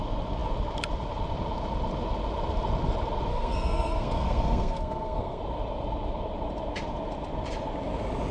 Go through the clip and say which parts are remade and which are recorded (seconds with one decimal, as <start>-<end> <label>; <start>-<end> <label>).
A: 0.0-3.3 recorded; 3.3-5.4 remade; 5.4-8.3 recorded

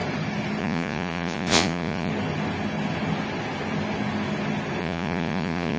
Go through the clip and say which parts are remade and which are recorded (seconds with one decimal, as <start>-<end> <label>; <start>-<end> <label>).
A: 0.0-0.6 recorded; 0.6-2.1 remade; 2.1-4.8 recorded; 4.8-5.8 remade

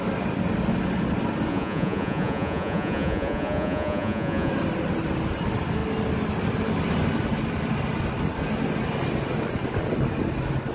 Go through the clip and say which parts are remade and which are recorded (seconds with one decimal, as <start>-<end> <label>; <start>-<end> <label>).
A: 0.0-1.5 recorded; 1.5-4.5 remade; 4.5-10.7 recorded

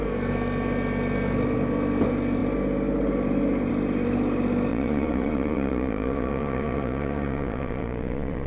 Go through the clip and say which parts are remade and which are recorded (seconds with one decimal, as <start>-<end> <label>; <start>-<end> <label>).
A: 0.0-4.7 recorded; 4.7-8.5 remade

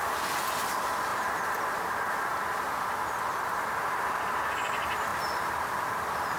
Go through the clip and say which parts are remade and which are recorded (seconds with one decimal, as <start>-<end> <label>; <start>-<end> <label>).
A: 0.0-1.1 recorded; 1.1-1.8 remade; 1.8-5.1 recorded; 5.1-5.7 remade; 5.7-6.4 recorded

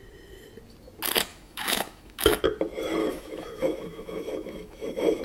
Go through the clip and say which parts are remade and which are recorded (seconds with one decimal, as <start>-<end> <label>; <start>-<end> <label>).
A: 0.0-1.3 recorded; 1.3-2.4 remade; 2.4-3.0 recorded; 3.0-5.2 remade

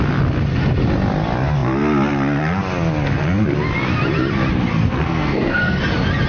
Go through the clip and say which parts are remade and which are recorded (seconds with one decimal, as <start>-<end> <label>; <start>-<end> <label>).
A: 0.0-4.7 recorded; 4.7-5.8 remade; 5.8-6.3 recorded

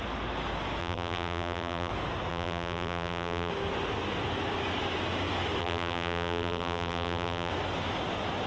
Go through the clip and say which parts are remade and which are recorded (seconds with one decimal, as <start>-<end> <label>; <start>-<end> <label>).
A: 0.0-0.8 recorded; 0.8-1.9 remade; 1.9-2.3 recorded; 2.3-3.5 remade; 3.5-5.6 recorded; 5.6-7.5 remade; 7.5-8.5 recorded